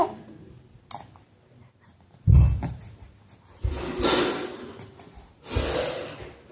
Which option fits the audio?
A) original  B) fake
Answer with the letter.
A